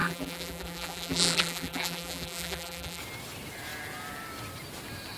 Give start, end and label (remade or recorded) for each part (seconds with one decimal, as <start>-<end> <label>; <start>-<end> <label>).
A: 0.0-3.0 remade; 3.0-5.2 recorded